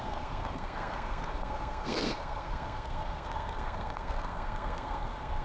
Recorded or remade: remade